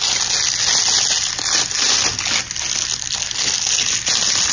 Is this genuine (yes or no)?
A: yes